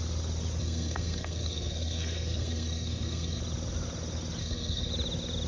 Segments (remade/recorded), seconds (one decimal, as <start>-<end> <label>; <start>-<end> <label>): 0.0-0.6 recorded; 0.6-3.4 remade; 3.4-4.4 recorded; 4.4-4.9 remade; 4.9-5.5 recorded